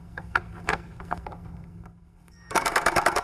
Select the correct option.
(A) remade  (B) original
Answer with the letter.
A